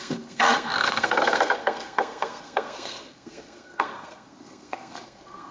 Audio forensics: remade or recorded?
remade